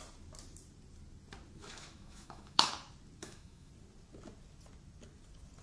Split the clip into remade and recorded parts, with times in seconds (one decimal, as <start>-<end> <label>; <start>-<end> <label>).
0.0-1.6 recorded; 1.6-2.7 remade; 2.7-3.2 recorded; 3.2-3.7 remade; 3.7-5.6 recorded

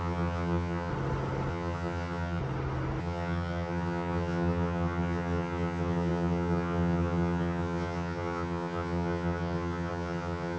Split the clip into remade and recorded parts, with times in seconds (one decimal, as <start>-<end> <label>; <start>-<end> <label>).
0.0-0.9 remade; 0.9-1.5 recorded; 1.5-2.4 remade; 2.4-3.0 recorded; 3.0-10.6 remade

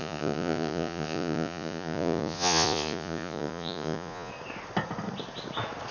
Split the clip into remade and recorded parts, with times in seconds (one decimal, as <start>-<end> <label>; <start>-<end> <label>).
0.0-4.3 remade; 4.3-5.9 recorded

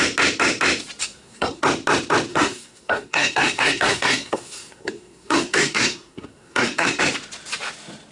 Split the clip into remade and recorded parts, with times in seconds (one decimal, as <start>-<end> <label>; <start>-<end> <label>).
0.0-1.0 recorded; 1.0-1.6 remade; 1.6-2.3 recorded; 2.3-7.0 remade; 7.0-8.1 recorded

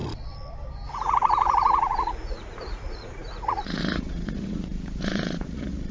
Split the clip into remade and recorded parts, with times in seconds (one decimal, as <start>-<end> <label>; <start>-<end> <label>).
0.0-0.9 recorded; 0.9-5.9 remade

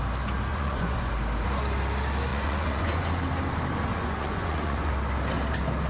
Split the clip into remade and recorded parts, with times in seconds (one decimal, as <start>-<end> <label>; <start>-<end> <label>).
0.0-0.5 recorded; 0.5-1.1 remade; 1.1-2.3 recorded; 2.3-3.2 remade; 3.2-3.9 recorded; 3.9-4.9 remade; 4.9-5.9 recorded

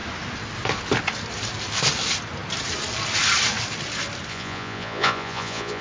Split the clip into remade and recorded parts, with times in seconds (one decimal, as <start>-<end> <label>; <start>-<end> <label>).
0.0-4.3 recorded; 4.3-5.8 remade

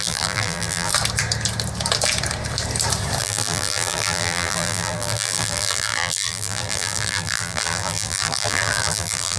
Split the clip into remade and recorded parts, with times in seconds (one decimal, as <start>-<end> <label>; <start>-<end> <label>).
0.0-0.9 remade; 0.9-3.2 recorded; 3.2-9.4 remade